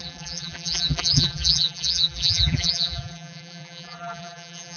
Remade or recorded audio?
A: remade